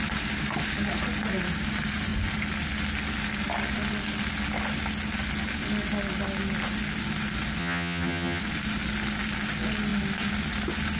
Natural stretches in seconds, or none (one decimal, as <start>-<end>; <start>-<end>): 0.0-7.6; 8.4-11.0